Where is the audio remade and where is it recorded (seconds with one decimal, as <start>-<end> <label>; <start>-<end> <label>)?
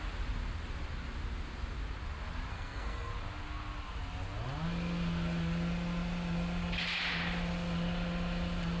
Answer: 0.0-2.5 recorded; 2.5-3.1 remade; 3.1-8.8 recorded